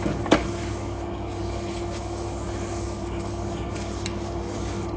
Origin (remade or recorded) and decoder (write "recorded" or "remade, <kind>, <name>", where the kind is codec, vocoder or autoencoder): remade, codec, DAC